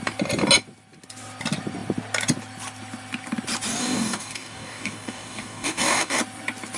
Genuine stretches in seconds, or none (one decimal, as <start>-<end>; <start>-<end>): 0.0-3.8; 6.2-6.8